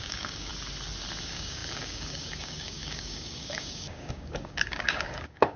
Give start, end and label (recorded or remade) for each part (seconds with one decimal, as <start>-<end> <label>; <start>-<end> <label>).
0.0-0.5 remade; 0.5-1.2 recorded; 1.2-5.6 remade